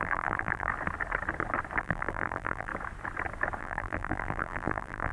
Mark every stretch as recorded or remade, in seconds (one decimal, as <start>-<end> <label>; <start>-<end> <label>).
0.0-0.7 remade; 0.7-1.8 recorded; 1.8-2.7 remade; 2.7-3.6 recorded; 3.6-5.1 remade